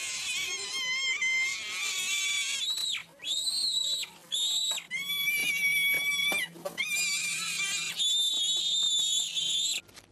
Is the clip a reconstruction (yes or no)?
no